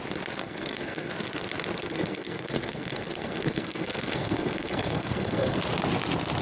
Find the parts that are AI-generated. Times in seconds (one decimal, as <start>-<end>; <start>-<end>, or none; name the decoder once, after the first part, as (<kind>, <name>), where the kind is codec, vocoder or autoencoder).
0.4-1.1 (codec, SNAC); 1.8-5.6

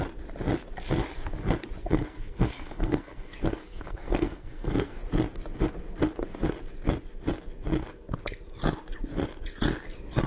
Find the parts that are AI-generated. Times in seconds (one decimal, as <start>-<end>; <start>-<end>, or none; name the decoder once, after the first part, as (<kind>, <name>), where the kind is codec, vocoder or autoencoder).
1.8-5.0 (codec, SNAC)